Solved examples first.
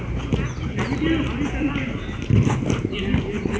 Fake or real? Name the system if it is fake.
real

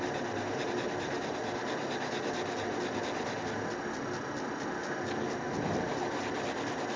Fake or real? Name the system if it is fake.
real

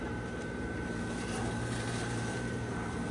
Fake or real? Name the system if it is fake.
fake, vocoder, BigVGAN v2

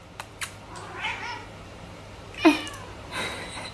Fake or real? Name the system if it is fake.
fake, vocoder, BigVGAN v2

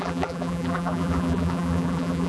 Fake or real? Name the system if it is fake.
fake, vocoder, BigVGAN v2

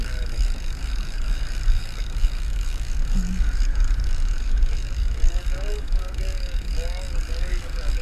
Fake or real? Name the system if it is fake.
fake, codec, DAC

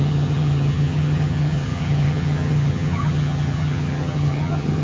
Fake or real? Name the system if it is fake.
fake, vocoder, HiFi-GAN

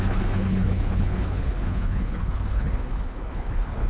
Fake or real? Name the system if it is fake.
fake, codec, HILCodec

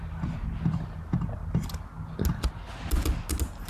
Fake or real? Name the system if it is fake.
real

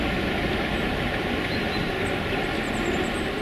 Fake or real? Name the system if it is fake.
real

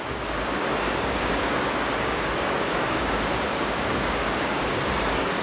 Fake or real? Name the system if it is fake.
fake, codec, DAC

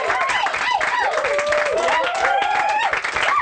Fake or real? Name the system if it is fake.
real